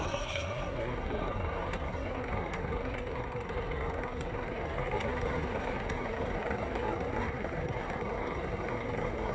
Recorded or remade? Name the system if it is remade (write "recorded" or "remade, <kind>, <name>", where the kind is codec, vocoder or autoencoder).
remade, codec, SNAC